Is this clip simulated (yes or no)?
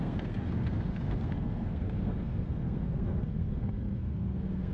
yes